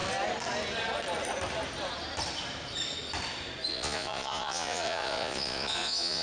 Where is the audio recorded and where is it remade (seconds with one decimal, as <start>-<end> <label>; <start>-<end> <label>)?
0.0-3.7 recorded; 3.7-6.2 remade